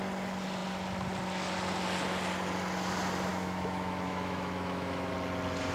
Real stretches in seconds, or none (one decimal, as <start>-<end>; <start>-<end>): 0.0-3.3; 5.1-5.7